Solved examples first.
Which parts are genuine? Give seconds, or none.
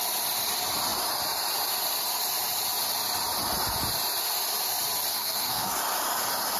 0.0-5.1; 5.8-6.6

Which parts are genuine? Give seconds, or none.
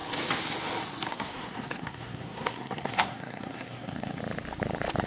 0.0-1.1; 4.2-5.1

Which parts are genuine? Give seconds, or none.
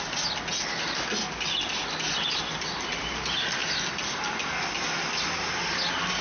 0.0-6.2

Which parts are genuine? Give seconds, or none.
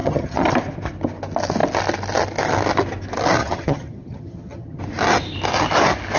0.5-3.4; 4.8-6.2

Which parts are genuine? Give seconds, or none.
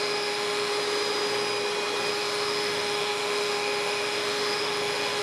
0.7-2.1